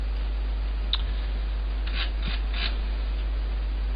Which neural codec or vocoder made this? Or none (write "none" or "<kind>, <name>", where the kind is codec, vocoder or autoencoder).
none